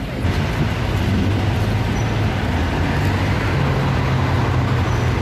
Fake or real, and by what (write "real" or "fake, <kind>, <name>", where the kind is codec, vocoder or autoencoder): real